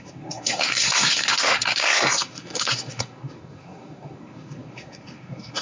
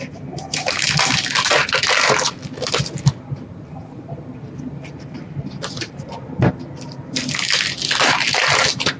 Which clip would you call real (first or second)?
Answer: second